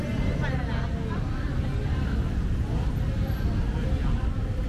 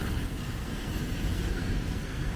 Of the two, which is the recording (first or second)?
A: first